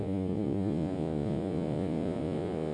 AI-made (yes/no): yes